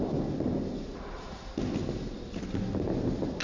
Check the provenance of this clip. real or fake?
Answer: real